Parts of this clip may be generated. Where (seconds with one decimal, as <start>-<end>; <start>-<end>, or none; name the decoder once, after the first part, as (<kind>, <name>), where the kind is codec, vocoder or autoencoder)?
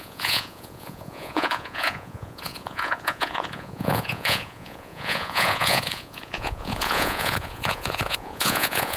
0.0-9.0 (vocoder, Vocos)